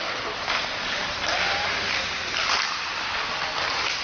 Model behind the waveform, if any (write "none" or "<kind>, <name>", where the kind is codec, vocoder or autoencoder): none